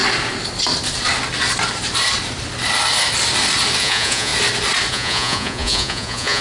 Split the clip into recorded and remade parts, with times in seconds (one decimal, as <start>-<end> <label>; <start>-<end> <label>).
0.0-3.8 recorded; 3.8-4.3 remade; 4.3-4.9 recorded; 4.9-6.4 remade